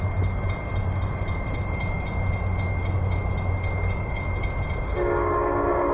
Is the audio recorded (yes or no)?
yes